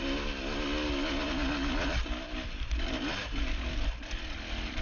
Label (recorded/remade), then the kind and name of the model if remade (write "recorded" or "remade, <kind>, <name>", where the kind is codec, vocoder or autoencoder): recorded